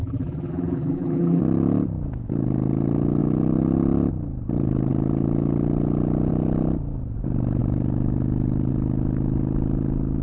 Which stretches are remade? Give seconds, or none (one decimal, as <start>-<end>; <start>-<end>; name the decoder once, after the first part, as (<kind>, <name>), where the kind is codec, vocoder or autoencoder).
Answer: 0.0-1.4 (vocoder, BigVGAN v2)